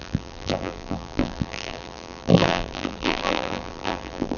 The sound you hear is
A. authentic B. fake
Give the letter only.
B